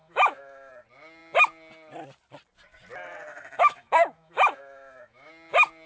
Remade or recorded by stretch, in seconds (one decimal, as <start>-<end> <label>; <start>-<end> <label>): 0.0-0.7 remade; 0.7-3.3 recorded; 3.3-5.3 remade; 5.3-5.9 recorded